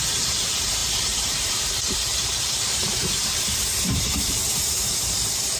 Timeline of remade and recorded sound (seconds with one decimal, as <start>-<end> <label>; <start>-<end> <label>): 0.0-5.6 remade